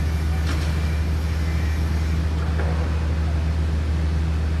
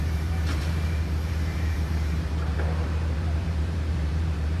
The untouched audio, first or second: first